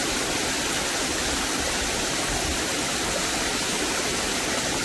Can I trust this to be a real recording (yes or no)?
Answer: yes